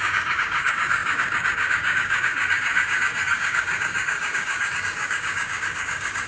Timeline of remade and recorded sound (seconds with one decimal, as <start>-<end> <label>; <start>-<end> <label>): 0.0-6.3 remade